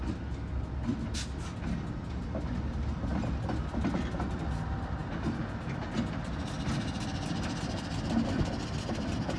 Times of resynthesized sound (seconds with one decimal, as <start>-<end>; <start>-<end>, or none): none